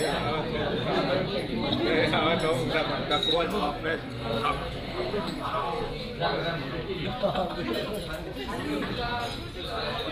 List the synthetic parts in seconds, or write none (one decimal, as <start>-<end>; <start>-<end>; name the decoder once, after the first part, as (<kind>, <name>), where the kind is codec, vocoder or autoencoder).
3.3-5.9 (codec, SNAC)